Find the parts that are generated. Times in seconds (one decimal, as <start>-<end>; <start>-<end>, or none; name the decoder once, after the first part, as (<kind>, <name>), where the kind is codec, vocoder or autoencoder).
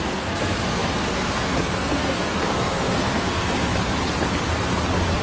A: 0.0-3.7 (codec, SNAC)